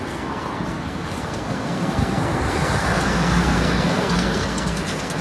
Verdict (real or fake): fake